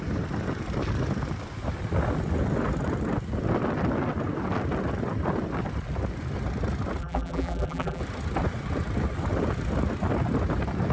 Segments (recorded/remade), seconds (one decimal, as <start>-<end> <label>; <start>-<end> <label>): 0.0-7.0 recorded; 7.0-8.0 remade; 8.0-10.9 recorded